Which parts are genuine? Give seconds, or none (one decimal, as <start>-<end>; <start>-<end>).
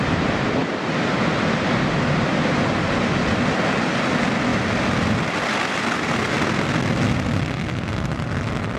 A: 0.0-8.8